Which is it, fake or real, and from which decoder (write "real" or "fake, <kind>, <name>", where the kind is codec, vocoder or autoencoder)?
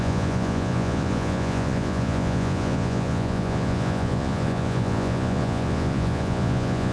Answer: fake, vocoder, Vocos